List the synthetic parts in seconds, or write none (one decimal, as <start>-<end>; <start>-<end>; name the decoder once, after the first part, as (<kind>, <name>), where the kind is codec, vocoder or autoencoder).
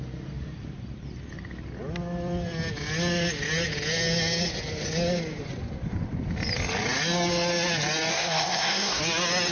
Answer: 8.1-9.0 (codec, SNAC)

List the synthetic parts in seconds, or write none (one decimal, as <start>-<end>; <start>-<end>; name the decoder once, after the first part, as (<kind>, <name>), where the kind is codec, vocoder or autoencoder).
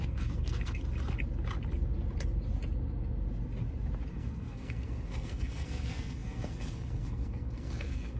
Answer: 0.0-0.8 (codec, SNAC); 4.1-8.2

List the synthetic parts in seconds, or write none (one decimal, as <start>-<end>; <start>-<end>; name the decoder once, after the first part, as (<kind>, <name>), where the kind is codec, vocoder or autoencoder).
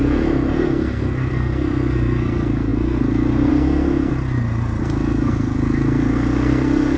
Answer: 0.0-4.1 (codec, SNAC); 4.8-7.0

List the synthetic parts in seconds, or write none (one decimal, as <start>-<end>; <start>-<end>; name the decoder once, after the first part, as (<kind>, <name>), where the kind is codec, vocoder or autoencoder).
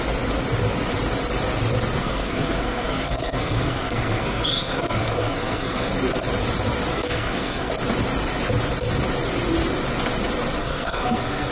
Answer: 2.0-5.9 (codec, SNAC); 6.9-7.7; 10.6-11.5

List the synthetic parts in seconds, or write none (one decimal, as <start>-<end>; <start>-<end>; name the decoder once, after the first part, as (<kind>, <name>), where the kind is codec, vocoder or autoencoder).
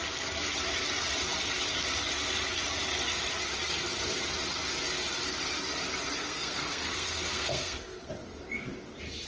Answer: 6.2-8.1 (codec, SNAC)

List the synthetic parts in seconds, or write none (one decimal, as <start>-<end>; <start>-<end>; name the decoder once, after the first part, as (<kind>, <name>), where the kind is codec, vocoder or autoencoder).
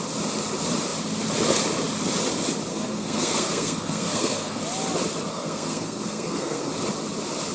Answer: 2.7-4.6 (codec, SNAC); 5.3-6.7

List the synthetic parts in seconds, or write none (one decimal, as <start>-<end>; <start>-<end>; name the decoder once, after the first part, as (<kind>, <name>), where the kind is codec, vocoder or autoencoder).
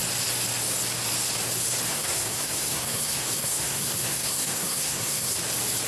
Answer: 1.9-5.4 (codec, SNAC)